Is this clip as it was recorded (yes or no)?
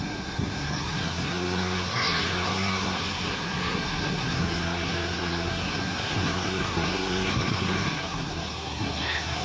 no